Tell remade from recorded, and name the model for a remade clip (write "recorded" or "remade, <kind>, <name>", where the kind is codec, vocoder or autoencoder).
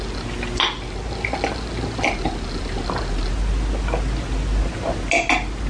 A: recorded